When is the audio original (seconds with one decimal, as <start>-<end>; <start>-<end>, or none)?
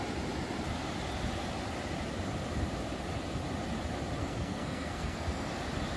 0.0-4.2; 5.5-6.0